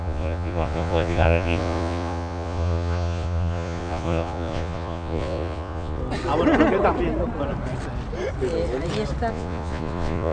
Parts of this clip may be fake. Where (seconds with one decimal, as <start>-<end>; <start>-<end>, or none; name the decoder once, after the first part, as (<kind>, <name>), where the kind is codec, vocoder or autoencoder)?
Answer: 0.0-6.0 (vocoder, Vocos); 9.3-10.3